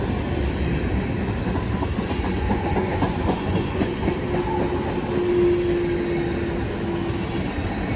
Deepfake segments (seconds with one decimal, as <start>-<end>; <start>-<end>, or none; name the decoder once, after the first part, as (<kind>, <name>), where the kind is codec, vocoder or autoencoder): 2.0-4.1 (vocoder, Vocos)